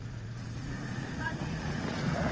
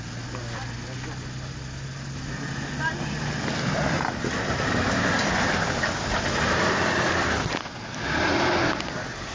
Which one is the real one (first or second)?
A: second